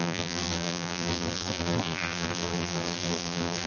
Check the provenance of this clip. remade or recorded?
remade